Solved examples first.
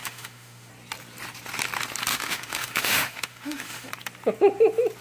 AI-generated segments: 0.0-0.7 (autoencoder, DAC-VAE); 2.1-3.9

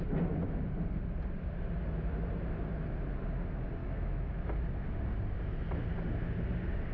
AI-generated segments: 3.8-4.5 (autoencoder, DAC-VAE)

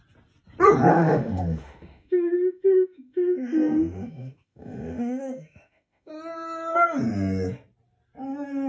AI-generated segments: 0.9-6.1 (autoencoder, DAC-VAE)

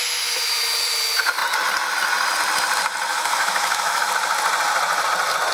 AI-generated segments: 3.1-4.1 (autoencoder, DAC-VAE)